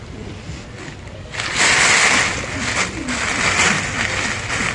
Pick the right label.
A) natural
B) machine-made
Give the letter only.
A